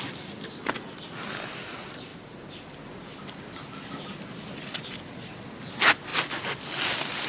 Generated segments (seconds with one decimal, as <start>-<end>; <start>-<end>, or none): none